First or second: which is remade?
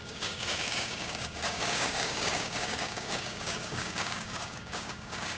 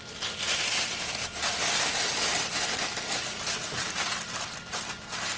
first